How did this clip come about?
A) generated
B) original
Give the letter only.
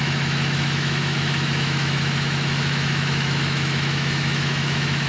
A